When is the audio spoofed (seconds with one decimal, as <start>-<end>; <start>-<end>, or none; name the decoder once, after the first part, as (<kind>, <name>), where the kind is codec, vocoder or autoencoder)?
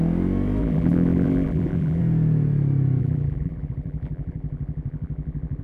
0.6-2.0 (vocoder, BigVGAN v2); 3.0-5.6